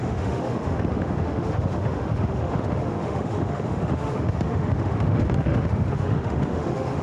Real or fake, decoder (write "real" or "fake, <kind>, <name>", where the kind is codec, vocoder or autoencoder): fake, autoencoder, DAC-VAE